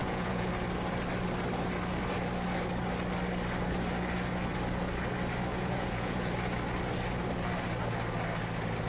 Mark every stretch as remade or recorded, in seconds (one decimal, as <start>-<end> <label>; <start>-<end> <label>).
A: 0.0-0.5 remade; 0.5-5.5 recorded; 5.5-6.3 remade; 6.3-8.9 recorded